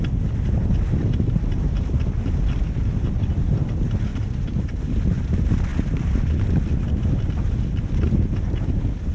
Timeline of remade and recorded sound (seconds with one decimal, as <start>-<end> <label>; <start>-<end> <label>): 0.0-4.1 recorded; 4.1-5.3 remade; 5.3-5.7 recorded; 5.7-6.4 remade; 6.4-9.1 recorded